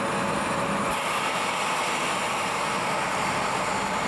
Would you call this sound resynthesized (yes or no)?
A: no